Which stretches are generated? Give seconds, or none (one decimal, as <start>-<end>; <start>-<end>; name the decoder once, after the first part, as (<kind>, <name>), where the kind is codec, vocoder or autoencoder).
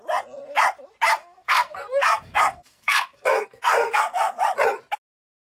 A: 1.2-4.4 (codec, SNAC)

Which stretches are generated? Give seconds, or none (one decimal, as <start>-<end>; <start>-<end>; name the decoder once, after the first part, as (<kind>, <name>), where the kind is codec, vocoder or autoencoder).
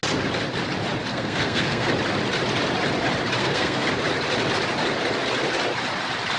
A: 1.1-1.9 (codec, SNAC); 3.4-3.9